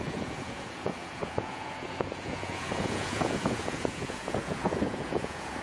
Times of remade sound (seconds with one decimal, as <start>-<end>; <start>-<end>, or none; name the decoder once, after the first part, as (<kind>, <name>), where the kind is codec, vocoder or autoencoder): 0.0-5.6 (vocoder, Vocos)